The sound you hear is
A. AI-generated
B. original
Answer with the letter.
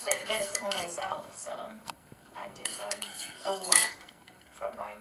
A